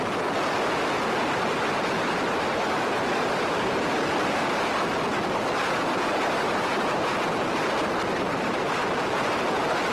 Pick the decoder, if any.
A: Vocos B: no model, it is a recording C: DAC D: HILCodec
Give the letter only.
B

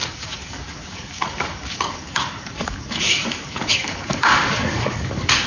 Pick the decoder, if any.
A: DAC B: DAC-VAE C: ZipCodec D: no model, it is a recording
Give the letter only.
A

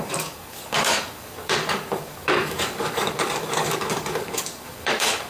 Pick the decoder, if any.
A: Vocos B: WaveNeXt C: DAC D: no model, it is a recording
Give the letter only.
C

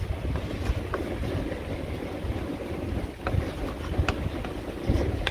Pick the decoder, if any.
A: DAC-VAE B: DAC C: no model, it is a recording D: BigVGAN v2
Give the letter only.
C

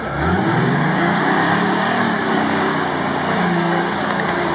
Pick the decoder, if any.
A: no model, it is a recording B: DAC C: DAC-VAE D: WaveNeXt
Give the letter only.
B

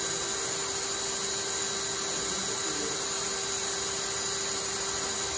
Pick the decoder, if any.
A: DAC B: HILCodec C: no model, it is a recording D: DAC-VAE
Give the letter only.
C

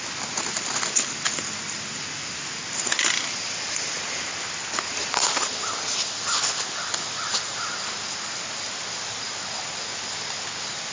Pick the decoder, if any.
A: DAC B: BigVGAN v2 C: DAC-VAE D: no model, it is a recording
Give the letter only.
D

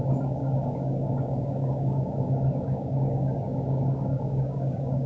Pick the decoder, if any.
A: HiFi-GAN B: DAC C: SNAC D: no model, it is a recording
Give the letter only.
B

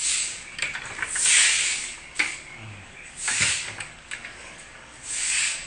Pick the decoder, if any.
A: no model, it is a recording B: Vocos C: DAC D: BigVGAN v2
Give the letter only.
C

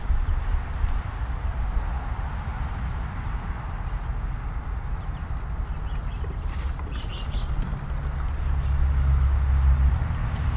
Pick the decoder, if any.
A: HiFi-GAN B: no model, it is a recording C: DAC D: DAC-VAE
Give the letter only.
B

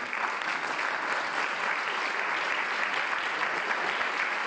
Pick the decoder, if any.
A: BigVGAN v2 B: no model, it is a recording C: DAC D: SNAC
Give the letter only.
B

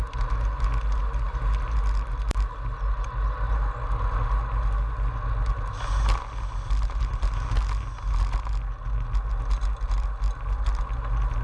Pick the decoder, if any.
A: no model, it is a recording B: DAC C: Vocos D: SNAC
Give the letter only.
A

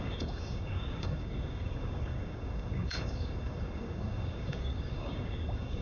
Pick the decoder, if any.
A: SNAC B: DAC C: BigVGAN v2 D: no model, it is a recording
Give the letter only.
B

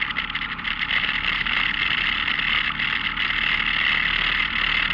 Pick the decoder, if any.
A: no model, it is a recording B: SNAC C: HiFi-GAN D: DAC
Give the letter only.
A